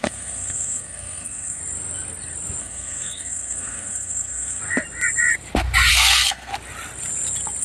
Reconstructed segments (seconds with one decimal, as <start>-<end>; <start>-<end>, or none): 0.0-1.6; 2.6-4.6; 5.9-6.5